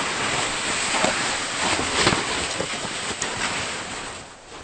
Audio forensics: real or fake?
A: real